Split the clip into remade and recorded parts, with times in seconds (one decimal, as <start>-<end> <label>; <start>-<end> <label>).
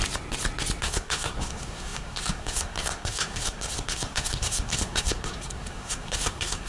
0.0-0.8 recorded; 0.8-6.7 remade